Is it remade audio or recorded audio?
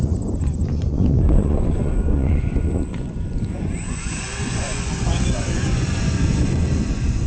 remade